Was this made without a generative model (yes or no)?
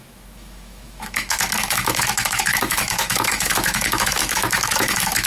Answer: no